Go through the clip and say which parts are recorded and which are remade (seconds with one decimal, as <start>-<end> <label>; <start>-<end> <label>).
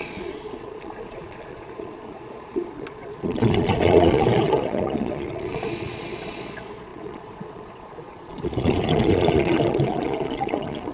0.0-10.9 remade